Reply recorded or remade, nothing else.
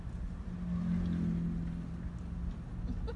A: recorded